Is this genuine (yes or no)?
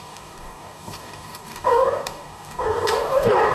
no